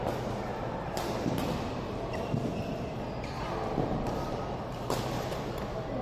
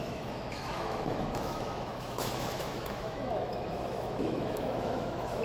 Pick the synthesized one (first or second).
second